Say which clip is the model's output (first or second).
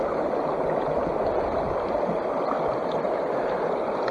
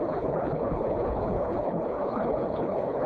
second